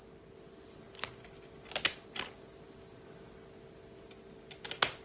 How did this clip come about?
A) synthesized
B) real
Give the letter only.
B